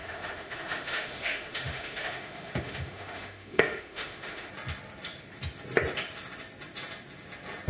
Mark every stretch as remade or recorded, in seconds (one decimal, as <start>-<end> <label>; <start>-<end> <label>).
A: 0.0-4.5 remade; 4.5-7.7 recorded